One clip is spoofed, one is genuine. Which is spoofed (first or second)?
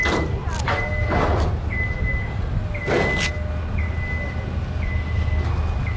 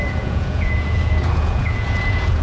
second